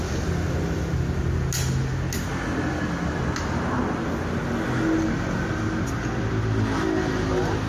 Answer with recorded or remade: recorded